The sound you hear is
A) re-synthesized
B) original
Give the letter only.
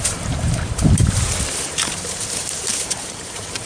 A